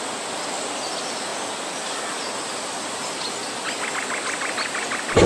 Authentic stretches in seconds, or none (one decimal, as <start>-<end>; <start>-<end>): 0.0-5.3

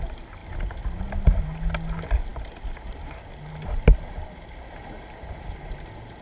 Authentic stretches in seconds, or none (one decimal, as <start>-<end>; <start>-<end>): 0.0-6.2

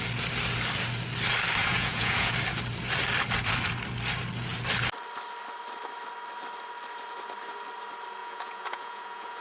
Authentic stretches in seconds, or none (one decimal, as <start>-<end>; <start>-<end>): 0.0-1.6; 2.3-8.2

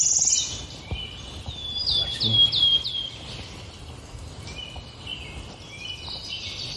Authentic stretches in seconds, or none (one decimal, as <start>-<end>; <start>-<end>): 0.0-6.8

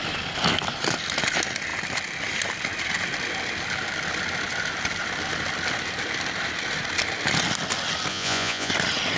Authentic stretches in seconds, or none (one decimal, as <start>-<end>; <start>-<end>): 0.0-8.1; 8.7-9.2